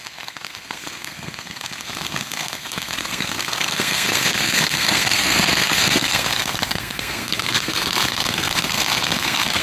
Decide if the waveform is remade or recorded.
remade